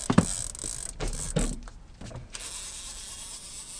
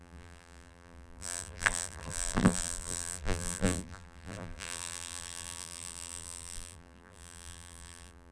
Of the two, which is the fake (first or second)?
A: second